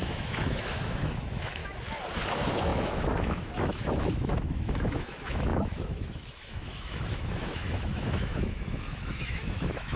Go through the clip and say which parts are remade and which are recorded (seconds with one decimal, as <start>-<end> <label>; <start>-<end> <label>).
0.0-1.6 remade; 1.6-2.3 recorded; 2.3-10.0 remade